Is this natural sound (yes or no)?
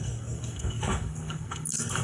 no